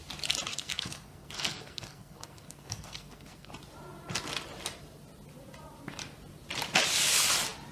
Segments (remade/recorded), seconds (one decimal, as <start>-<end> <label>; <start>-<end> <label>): 0.0-0.5 recorded; 0.5-3.5 remade; 3.5-7.7 recorded